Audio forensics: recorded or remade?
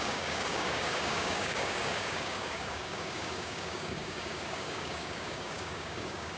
remade